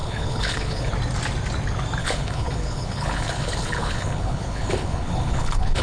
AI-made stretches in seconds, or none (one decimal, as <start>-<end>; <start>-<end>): 0.0-0.9; 2.0-5.8